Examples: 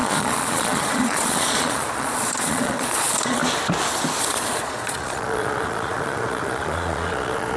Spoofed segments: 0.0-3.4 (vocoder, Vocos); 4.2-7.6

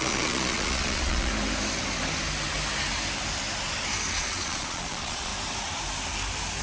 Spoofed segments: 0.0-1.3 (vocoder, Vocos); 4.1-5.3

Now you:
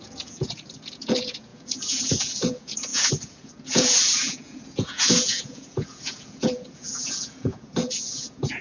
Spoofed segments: 0.0-8.6 (vocoder, Vocos)

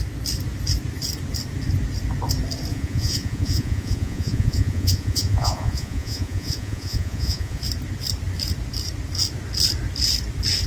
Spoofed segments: 2.7-7.6 (vocoder, Vocos)